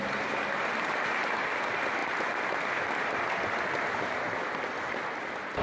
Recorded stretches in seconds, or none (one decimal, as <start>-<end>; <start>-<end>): 0.0-5.6